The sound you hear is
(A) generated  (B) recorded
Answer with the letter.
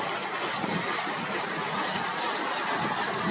B